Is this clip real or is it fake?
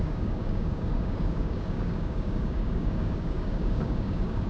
fake